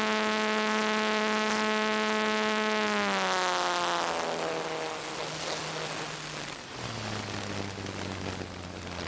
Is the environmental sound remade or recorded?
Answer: recorded